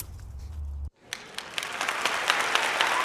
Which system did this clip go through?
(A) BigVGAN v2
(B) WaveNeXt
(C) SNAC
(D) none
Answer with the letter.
D